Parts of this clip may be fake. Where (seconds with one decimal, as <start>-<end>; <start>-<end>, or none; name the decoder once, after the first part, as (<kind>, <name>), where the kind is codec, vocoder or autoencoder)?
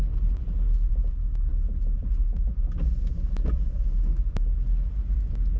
none